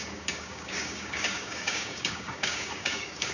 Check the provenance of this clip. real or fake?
fake